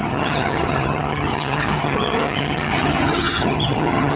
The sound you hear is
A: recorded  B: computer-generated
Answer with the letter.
B